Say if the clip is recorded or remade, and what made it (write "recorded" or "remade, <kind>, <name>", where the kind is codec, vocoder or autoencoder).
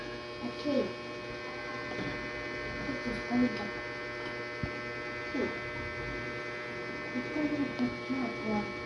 recorded